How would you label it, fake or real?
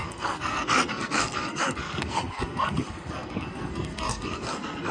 fake